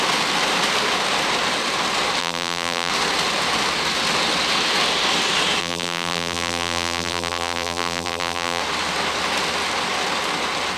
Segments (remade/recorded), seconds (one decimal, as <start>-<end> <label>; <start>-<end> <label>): 0.0-2.2 recorded; 2.2-2.9 remade; 2.9-5.6 recorded; 5.6-8.6 remade; 8.6-10.8 recorded